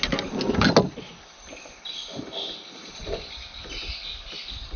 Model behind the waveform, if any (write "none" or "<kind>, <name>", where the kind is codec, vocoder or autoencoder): none